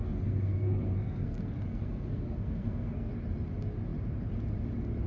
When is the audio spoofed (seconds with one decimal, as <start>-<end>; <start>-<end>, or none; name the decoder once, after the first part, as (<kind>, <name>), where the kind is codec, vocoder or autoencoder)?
0.0-3.1 (codec, SNAC)